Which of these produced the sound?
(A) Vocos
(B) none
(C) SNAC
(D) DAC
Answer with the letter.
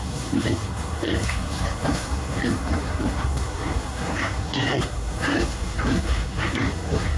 C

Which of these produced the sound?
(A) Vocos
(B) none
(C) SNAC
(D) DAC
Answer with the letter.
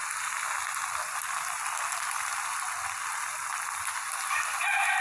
B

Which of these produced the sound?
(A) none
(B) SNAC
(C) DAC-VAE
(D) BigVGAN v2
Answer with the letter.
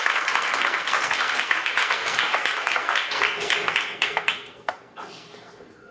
B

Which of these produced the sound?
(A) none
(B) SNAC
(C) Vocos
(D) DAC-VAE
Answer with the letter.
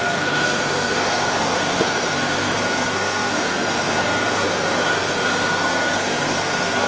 B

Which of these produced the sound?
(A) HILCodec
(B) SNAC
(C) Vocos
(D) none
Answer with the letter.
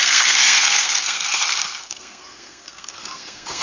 B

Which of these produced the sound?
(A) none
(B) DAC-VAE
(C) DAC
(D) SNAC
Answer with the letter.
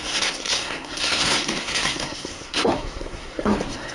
D